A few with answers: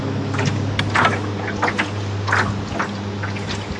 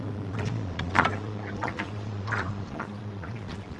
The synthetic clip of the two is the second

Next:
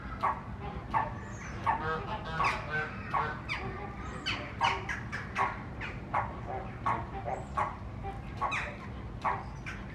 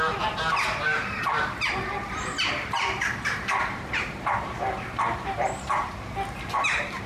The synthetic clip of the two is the second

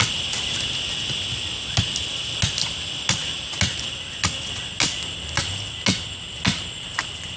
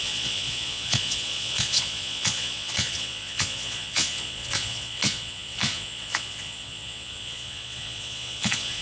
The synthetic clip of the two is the second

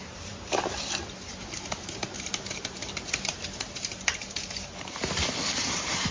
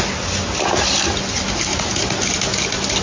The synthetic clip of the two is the first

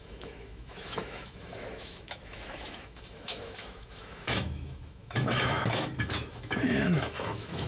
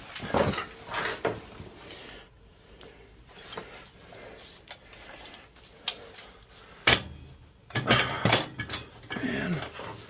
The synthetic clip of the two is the first